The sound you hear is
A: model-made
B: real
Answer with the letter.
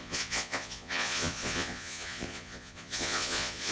A